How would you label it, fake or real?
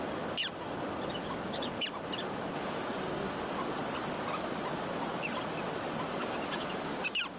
real